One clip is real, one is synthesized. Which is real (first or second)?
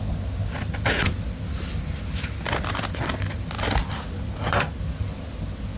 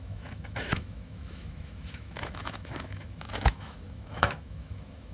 first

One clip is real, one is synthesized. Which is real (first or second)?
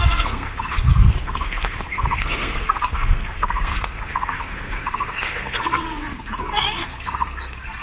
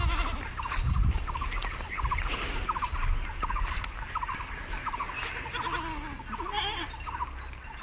second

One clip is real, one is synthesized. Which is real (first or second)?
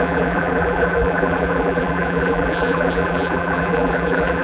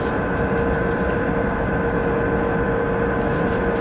second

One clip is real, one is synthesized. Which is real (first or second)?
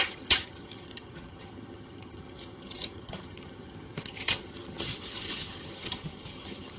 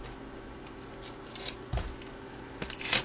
second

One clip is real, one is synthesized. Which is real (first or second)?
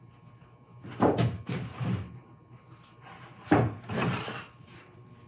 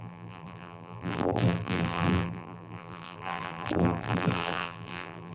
first